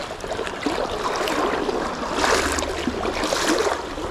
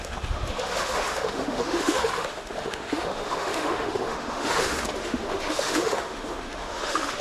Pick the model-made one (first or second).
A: second